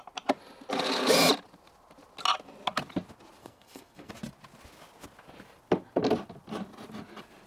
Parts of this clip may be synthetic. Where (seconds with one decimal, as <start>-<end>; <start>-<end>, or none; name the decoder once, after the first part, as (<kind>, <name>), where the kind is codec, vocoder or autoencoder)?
3.4-4.1 (codec, SNAC)